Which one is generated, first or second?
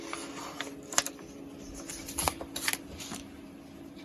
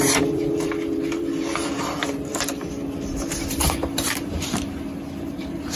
second